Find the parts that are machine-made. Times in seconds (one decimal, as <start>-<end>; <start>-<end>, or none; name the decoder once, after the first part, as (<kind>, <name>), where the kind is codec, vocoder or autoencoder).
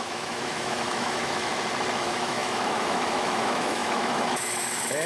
0.0-1.5 (autoencoder, DAC-VAE); 2.0-5.1